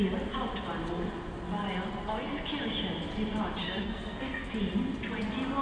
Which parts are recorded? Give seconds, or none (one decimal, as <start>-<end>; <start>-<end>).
0.0-3.6; 4.5-5.6